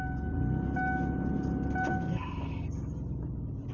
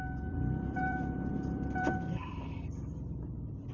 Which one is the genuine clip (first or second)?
first